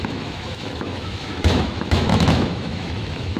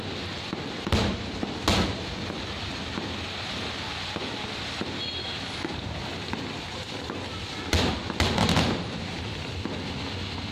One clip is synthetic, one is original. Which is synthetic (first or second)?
first